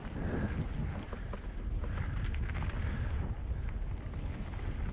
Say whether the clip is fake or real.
real